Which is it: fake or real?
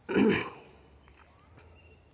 real